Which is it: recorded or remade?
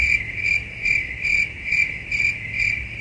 recorded